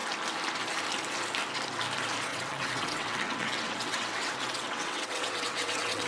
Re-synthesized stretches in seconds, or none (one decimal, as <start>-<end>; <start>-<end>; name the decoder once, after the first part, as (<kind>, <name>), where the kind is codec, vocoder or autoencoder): 2.3-6.1 (vocoder, WaveNeXt)

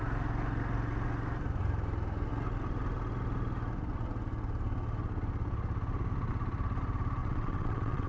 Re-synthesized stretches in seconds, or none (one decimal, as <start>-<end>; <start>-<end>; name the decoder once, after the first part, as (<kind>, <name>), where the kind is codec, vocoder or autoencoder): 7.2-8.1 (vocoder, WaveNeXt)

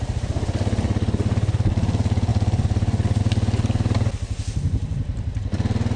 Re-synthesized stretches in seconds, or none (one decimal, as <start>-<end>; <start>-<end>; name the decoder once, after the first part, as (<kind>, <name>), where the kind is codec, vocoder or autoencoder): none

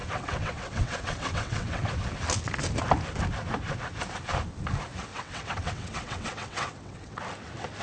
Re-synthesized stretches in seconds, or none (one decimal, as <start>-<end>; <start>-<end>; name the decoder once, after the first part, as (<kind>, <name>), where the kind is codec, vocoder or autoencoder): 0.0-1.9 (vocoder, WaveNeXt); 5.1-7.2

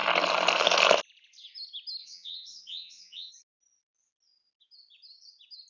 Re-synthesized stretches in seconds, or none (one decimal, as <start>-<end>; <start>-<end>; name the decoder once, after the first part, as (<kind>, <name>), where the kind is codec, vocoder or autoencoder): 2.0-3.3 (vocoder, WaveNeXt)